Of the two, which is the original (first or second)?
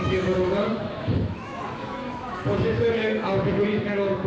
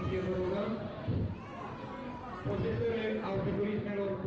second